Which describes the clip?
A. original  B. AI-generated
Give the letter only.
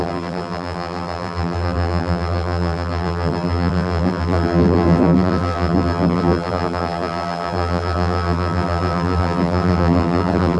B